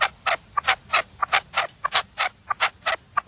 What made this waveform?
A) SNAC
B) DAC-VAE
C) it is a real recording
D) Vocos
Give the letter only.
C